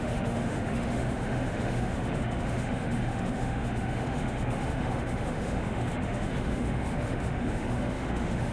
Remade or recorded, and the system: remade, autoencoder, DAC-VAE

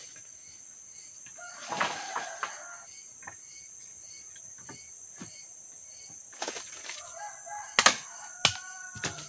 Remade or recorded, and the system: recorded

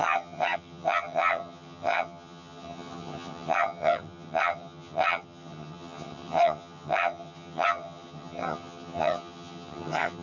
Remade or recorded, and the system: remade, vocoder, HiFi-GAN